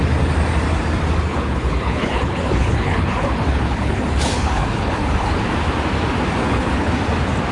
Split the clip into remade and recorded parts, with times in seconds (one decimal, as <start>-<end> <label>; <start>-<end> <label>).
0.0-1.3 recorded; 1.3-5.4 remade; 5.4-6.4 recorded; 6.4-6.9 remade; 6.9-7.5 recorded